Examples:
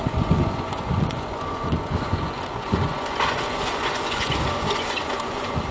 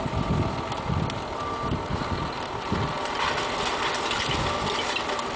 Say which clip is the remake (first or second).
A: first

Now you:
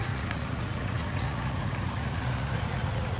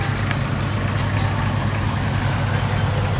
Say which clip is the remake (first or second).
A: first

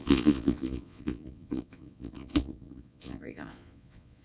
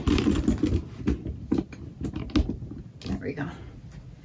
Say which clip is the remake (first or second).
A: first